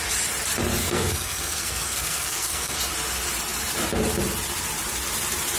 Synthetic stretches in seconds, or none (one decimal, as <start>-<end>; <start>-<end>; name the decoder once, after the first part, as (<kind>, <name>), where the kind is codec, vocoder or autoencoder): 0.8-2.8 (codec, SNAC)